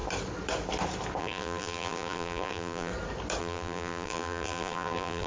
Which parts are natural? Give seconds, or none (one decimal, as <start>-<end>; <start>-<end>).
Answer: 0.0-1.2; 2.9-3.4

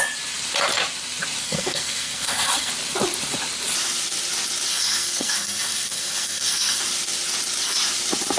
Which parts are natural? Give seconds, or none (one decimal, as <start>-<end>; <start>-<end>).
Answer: 0.0-1.4; 2.7-4.7; 6.8-8.4

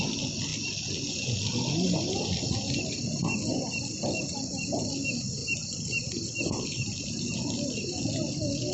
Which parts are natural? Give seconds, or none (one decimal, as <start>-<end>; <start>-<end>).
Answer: 0.0-8.7

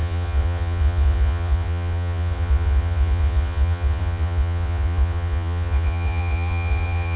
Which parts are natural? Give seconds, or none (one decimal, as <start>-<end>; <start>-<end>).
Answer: none

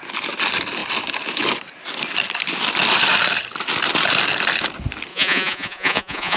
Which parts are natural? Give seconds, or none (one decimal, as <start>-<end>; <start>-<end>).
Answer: 0.0-5.1